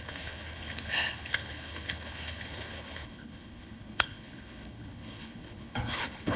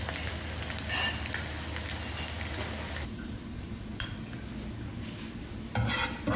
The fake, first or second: first